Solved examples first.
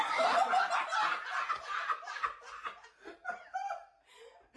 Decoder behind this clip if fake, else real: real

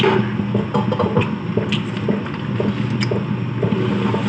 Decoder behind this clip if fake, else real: real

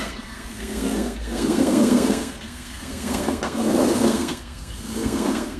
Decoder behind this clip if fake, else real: fake, codec, SNAC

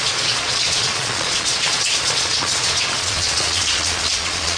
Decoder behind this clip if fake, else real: fake, vocoder, Vocos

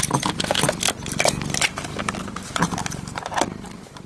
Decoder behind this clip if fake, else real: real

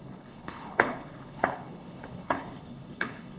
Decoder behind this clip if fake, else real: fake, codec, HILCodec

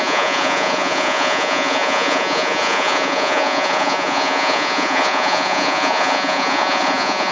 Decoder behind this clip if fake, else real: fake, vocoder, Vocos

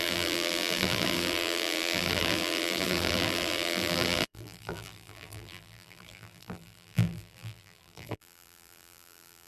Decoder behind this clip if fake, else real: fake, vocoder, BigVGAN v2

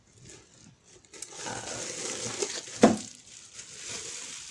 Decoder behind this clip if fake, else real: real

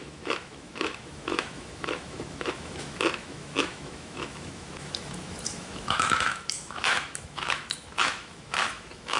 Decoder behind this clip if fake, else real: fake, autoencoder, DAC-VAE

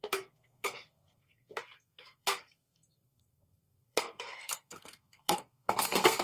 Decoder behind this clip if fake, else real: fake, codec, SNAC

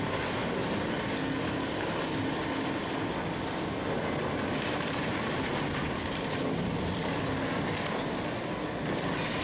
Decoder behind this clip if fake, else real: real